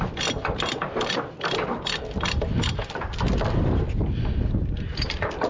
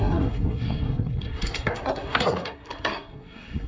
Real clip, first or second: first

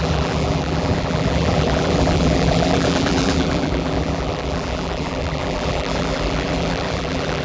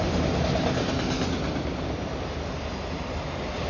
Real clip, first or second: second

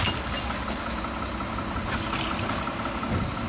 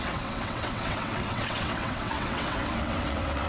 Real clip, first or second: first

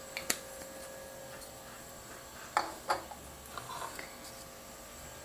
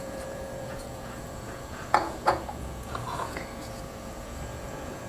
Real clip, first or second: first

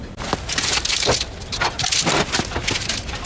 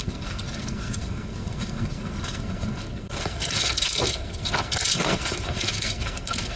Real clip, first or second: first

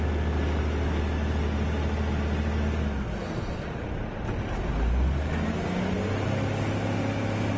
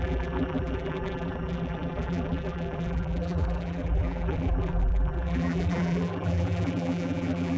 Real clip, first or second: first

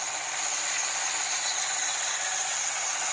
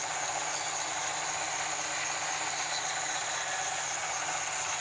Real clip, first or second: second